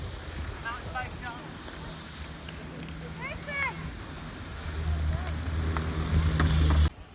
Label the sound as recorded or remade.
recorded